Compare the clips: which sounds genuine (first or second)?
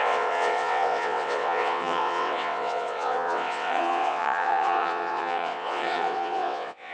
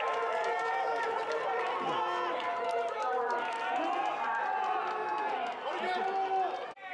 second